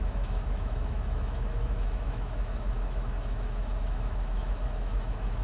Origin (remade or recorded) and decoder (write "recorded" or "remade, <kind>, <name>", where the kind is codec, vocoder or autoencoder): remade, autoencoder, DAC-VAE